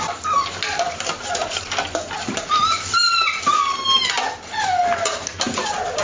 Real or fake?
real